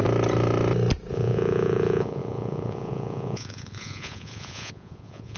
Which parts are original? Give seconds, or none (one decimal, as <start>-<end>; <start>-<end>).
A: 0.0-1.1

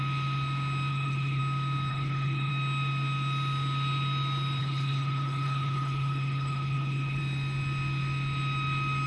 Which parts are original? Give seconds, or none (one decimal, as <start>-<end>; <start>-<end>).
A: 0.0-0.9; 1.4-1.9; 2.5-4.6; 7.2-9.1

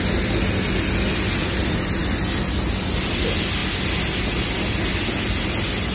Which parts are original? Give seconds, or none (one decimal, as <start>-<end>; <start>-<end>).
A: 0.0-5.9

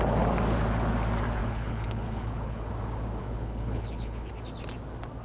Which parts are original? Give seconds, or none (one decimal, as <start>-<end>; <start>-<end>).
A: 0.0-1.4; 2.7-3.2; 4.3-5.2

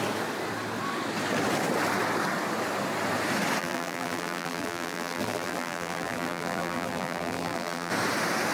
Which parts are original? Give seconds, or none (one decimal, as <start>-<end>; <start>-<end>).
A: 0.0-3.6; 7.9-8.5

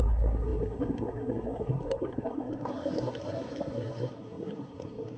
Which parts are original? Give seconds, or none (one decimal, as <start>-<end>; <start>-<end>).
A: none

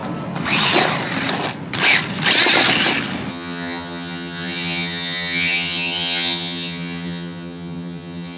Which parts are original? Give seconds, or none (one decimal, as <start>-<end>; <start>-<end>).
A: 0.0-3.3

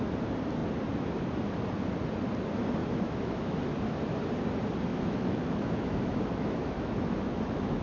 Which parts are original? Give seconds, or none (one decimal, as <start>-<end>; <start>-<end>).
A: 0.0-2.8; 3.6-4.9